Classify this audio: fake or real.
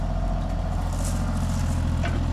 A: real